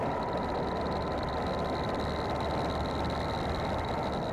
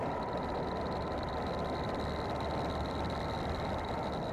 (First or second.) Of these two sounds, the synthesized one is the second